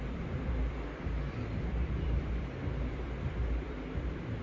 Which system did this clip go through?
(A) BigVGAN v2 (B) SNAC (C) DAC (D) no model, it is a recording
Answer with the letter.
A